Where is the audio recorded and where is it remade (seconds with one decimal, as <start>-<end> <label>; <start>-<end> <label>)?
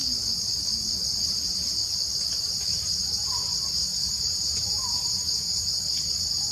0.0-3.8 recorded; 3.8-5.6 remade; 5.6-6.5 recorded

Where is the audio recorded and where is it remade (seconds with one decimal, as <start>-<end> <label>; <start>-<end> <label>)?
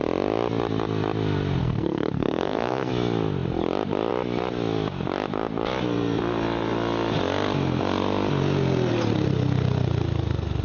0.0-1.6 recorded; 1.6-2.9 remade; 2.9-10.6 recorded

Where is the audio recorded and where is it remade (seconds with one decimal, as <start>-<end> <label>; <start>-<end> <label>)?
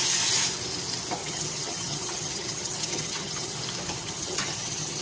0.0-1.2 recorded; 1.2-3.6 remade; 3.6-4.0 recorded; 4.0-5.0 remade